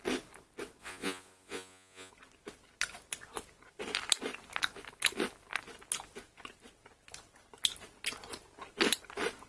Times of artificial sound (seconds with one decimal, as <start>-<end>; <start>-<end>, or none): 0.8-2.1